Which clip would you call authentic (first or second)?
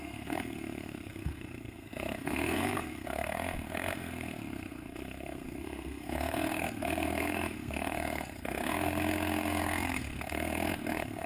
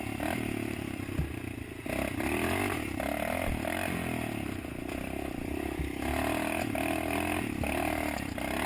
second